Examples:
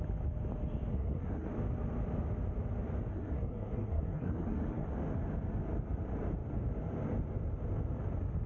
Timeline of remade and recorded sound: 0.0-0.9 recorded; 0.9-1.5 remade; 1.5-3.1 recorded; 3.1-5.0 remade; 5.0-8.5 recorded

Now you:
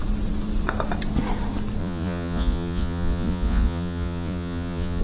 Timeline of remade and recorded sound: 0.0-1.8 recorded; 1.8-5.0 remade

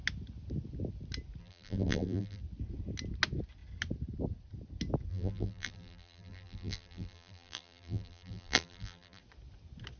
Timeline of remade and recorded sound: 0.0-1.4 recorded; 1.4-2.4 remade; 2.4-5.1 recorded; 5.1-9.2 remade; 9.2-10.0 recorded

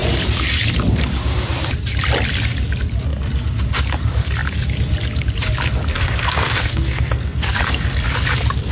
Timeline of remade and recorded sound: 0.0-5.9 recorded; 5.9-7.6 remade; 7.6-8.7 recorded

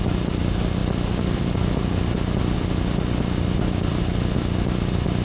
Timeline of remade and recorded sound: 0.0-5.2 recorded